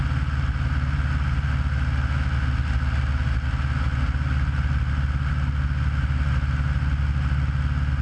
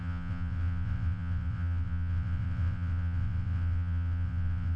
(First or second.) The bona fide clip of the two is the first